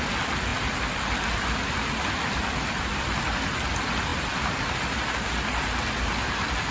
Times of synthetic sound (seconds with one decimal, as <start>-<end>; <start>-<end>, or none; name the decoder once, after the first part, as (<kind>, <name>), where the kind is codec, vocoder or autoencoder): none